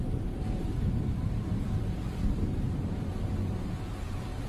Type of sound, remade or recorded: recorded